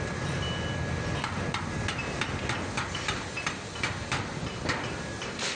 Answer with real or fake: real